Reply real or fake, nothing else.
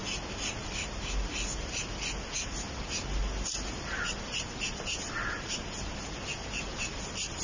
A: real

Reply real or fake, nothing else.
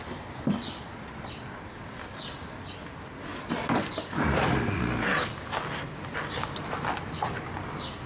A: real